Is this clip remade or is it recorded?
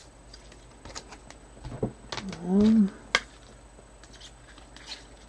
recorded